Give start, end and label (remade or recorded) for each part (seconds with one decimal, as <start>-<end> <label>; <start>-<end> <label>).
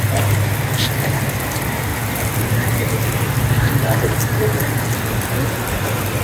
0.0-6.2 recorded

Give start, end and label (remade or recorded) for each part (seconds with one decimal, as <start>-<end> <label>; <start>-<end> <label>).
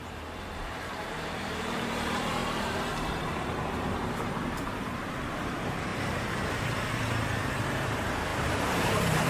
0.0-8.3 remade; 8.3-8.9 recorded; 8.9-9.3 remade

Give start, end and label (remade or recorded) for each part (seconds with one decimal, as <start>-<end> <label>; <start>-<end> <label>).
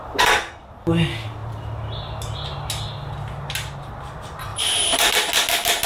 0.0-4.5 recorded; 4.5-5.1 remade; 5.1-5.9 recorded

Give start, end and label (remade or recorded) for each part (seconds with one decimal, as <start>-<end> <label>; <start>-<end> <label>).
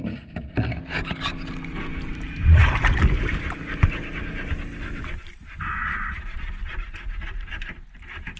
0.0-8.4 recorded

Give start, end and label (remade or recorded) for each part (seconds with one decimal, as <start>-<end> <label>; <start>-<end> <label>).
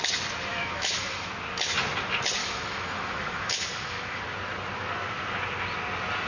0.0-0.5 recorded; 0.5-1.3 remade; 1.3-2.4 recorded; 2.4-4.2 remade; 4.2-6.3 recorded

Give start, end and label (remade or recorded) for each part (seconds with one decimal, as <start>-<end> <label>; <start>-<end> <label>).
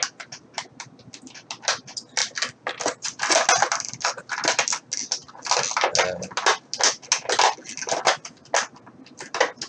0.0-9.7 recorded